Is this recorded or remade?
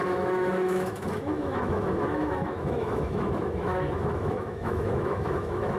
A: remade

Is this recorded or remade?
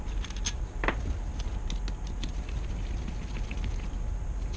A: recorded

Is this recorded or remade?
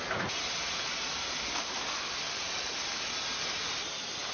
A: recorded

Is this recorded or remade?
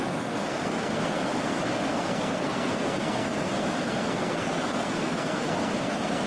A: remade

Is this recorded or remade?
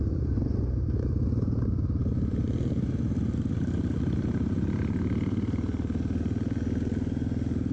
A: recorded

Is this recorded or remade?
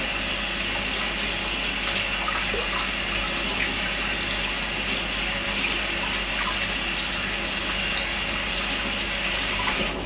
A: recorded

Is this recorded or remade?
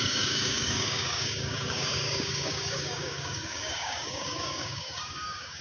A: remade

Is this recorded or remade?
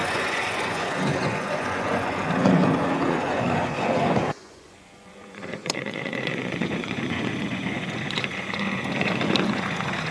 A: remade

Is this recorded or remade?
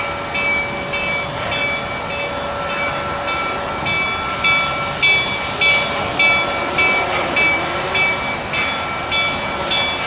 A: recorded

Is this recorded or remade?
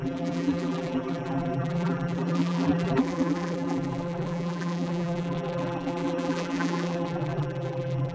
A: remade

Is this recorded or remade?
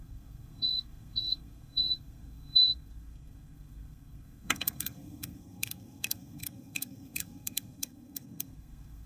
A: remade